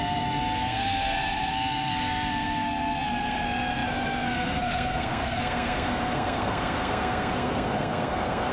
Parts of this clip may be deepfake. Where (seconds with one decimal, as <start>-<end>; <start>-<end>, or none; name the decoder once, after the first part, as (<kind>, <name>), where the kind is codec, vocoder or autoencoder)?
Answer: 0.0-8.5 (codec, SNAC)